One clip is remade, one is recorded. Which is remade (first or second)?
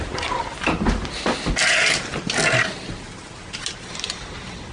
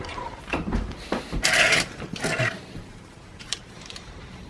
second